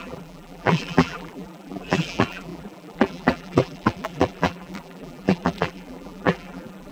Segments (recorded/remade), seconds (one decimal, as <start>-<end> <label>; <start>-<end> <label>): 0.0-6.9 remade